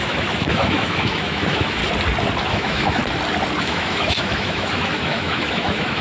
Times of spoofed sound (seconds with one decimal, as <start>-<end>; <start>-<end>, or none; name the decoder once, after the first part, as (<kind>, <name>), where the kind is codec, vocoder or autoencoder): 0.0-1.8 (autoencoder, DAC-VAE); 2.5-3.0; 3.6-6.0